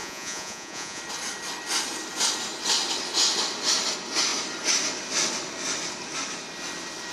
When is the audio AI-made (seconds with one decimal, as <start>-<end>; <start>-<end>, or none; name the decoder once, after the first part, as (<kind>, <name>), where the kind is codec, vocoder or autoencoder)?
0.0-1.0 (vocoder, Vocos)